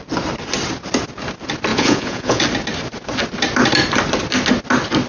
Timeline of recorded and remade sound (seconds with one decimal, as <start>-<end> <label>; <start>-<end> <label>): 0.0-1.7 recorded; 1.7-2.4 remade; 2.4-5.1 recorded